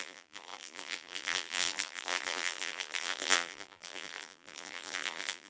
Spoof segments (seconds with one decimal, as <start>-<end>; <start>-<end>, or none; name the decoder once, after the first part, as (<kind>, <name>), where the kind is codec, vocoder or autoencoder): 0.0-5.5 (vocoder, BigVGAN v2)